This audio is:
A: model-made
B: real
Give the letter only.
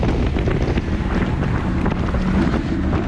B